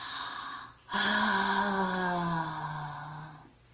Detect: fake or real real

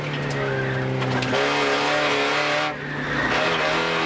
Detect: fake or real real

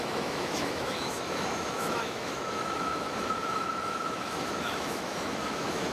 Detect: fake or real fake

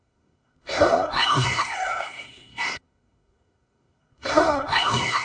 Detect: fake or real fake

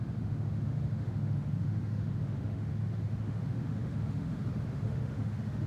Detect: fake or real fake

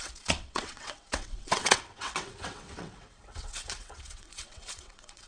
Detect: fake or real fake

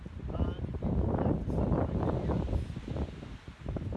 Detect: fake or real real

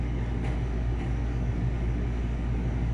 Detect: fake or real fake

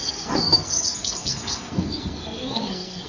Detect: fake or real fake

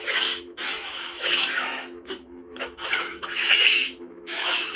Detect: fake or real fake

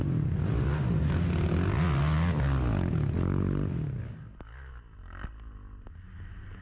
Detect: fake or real real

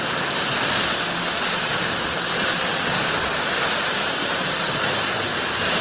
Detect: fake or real real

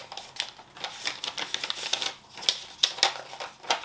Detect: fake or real real